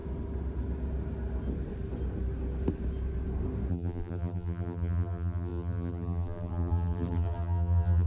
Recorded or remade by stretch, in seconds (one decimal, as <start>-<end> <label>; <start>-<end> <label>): 0.0-3.7 recorded; 3.7-8.1 remade